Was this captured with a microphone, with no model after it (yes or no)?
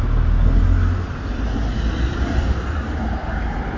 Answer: yes